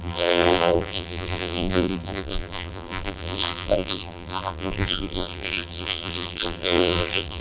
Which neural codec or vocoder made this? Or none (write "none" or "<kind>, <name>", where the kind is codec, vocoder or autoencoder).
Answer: vocoder, BigVGAN v2